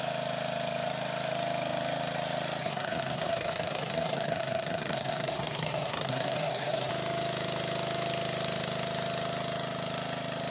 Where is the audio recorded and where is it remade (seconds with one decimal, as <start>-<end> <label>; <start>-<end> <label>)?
0.0-2.6 recorded; 2.6-6.9 remade; 6.9-10.5 recorded